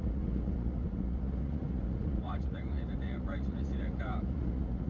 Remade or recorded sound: remade